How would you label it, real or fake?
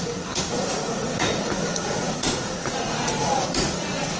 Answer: fake